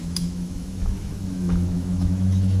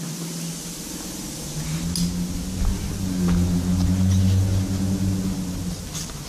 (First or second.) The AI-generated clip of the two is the first